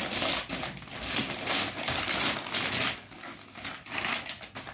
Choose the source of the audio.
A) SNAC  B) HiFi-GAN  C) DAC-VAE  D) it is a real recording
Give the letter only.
D